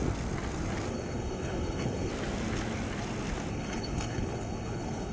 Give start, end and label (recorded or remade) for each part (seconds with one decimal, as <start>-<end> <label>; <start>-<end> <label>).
0.0-0.9 recorded; 0.9-2.1 remade; 2.1-3.5 recorded; 3.5-5.1 remade